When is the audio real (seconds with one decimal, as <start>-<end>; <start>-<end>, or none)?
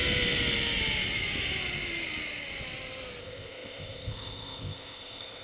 0.0-3.2